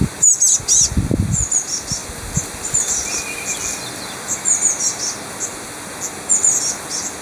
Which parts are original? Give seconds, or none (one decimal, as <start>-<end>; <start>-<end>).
0.0-7.2